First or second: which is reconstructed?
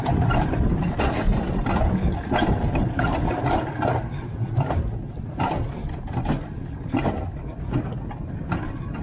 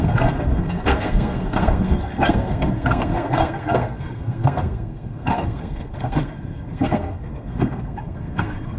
second